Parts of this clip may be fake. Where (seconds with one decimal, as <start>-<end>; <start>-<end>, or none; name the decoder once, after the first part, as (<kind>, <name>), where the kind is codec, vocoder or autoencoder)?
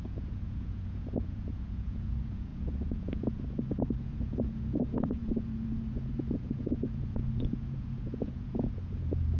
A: 0.0-9.4 (vocoder, Vocos)